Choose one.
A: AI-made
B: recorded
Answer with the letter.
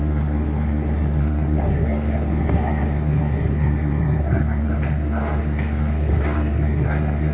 A